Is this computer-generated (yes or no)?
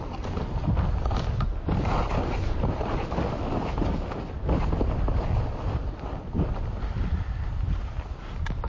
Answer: no